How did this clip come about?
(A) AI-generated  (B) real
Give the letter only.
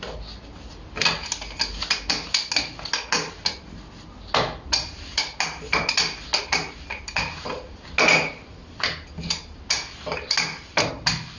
B